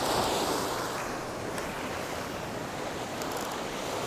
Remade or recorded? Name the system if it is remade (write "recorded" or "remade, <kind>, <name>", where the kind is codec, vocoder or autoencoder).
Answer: recorded